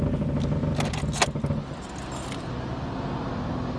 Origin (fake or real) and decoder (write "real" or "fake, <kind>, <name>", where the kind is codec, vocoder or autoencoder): real